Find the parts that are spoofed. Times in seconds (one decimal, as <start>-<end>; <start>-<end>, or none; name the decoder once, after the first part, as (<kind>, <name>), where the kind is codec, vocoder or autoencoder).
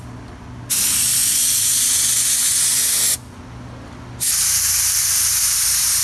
1.2-2.8 (vocoder, Vocos)